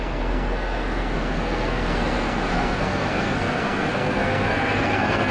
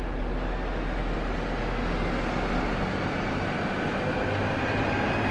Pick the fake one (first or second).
first